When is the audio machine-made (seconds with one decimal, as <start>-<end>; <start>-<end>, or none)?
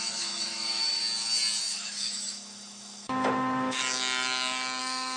0.0-1.0; 1.6-3.8; 4.8-5.2